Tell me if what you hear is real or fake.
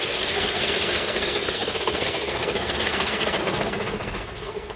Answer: fake